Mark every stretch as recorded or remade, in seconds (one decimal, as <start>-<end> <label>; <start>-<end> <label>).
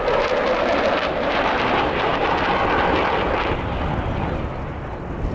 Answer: 0.0-5.3 recorded